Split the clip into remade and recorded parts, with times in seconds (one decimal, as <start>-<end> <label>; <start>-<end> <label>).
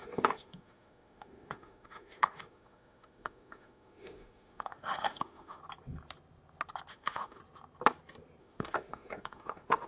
0.0-5.6 remade; 5.6-6.9 recorded; 6.9-7.4 remade; 7.4-8.4 recorded; 8.4-9.9 remade